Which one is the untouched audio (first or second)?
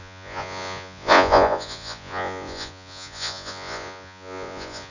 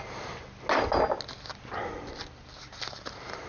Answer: second